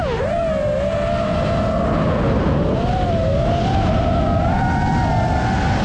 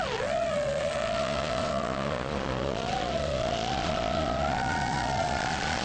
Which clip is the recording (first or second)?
first